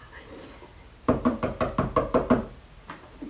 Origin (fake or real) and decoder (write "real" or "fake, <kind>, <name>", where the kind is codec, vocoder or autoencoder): real